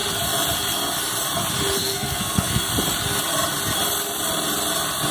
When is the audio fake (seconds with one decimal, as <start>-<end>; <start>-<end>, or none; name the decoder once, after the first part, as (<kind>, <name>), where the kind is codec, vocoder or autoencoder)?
1.8-2.7 (codec, SNAC)